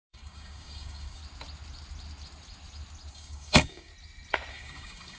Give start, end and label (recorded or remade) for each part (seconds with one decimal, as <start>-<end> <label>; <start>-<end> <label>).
0.0-1.2 remade; 1.2-3.1 recorded; 3.1-3.9 remade; 3.9-4.5 recorded; 4.5-5.2 remade